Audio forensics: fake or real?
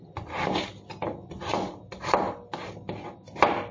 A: real